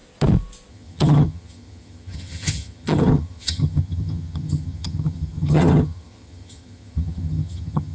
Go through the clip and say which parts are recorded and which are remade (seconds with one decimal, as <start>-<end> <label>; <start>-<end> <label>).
0.0-0.7 recorded; 0.7-7.9 remade